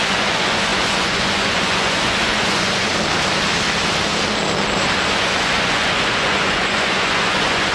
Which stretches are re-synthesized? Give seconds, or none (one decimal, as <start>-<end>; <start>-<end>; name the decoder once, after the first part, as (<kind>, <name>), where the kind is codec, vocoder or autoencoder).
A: 0.0-2.9 (vocoder, Vocos); 5.1-7.7